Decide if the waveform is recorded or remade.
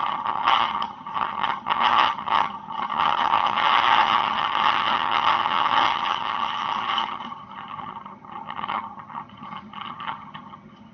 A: remade